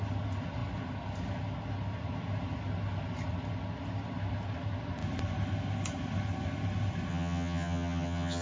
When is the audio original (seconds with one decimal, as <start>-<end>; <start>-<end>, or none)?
0.0-7.1